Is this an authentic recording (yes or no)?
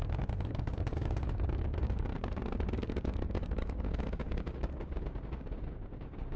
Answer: no